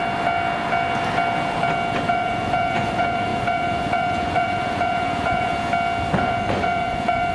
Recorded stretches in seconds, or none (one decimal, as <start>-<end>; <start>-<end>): 0.0-2.1; 5.5-6.2